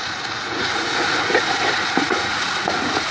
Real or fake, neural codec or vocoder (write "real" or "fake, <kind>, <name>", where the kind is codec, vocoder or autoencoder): fake, vocoder, Vocos